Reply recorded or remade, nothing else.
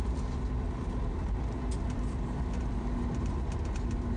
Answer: remade